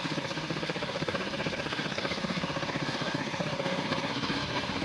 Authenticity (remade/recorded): remade